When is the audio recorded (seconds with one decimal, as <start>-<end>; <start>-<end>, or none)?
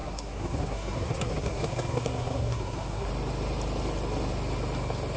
3.1-5.2